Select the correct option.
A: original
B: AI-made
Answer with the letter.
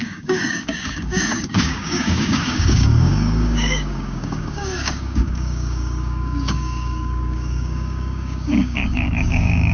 B